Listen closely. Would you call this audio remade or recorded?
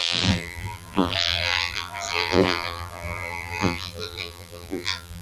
remade